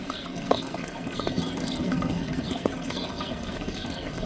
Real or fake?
fake